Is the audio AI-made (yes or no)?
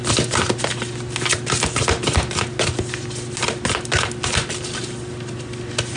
no